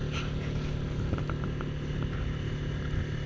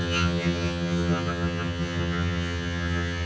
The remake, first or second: second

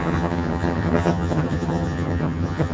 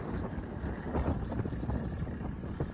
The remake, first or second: first